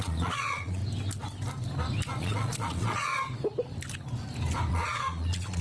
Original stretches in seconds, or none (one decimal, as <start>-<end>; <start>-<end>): 0.8-2.2; 3.1-4.7